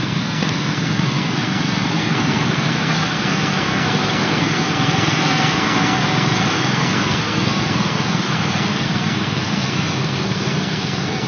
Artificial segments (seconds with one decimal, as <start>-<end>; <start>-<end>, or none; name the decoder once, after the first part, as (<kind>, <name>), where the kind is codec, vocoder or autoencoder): 0.0-11.3 (codec, SNAC)